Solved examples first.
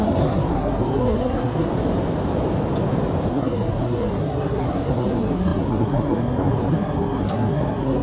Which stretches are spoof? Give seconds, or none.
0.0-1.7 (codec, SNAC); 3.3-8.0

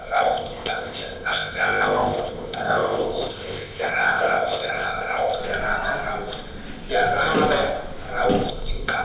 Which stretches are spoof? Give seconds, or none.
0.0-5.4 (codec, ZipCodec); 8.5-9.0

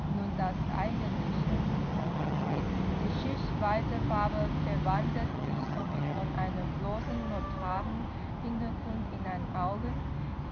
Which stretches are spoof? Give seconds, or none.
1.9-2.6 (vocoder, HiFi-GAN); 5.3-6.2

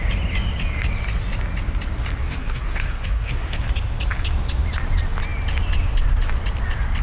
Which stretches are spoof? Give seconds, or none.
2.2-3.6 (codec, SNAC)

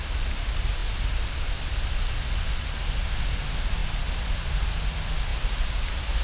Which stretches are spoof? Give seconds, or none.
none